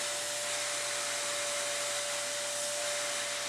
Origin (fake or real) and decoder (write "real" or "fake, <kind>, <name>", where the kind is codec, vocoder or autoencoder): real